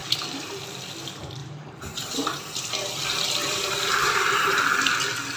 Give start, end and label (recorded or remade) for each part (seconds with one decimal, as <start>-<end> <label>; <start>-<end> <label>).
0.0-0.6 remade; 0.6-1.4 recorded; 1.4-2.6 remade; 2.6-3.4 recorded; 3.4-4.6 remade; 4.6-5.4 recorded